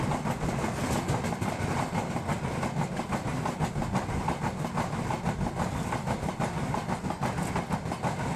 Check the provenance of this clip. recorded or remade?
recorded